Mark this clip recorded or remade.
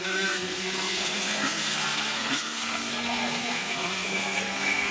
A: remade